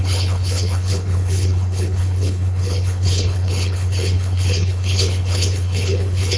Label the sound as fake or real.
fake